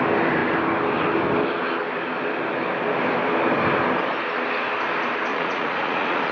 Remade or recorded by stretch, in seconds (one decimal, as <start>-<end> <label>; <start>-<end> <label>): 0.0-5.3 recorded; 5.3-6.3 remade